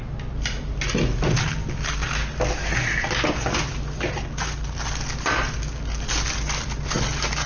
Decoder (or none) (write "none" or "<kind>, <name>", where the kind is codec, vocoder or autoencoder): none